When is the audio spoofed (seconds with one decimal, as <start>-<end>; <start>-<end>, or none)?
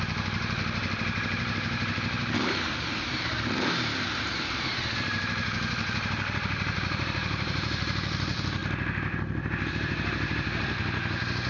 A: 0.0-8.6; 9.7-10.8